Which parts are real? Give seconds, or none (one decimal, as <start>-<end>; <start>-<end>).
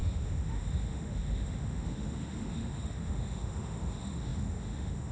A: none